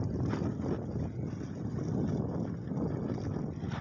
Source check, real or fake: real